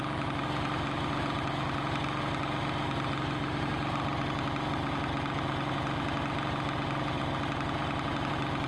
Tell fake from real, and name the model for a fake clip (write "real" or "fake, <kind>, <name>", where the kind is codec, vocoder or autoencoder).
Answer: real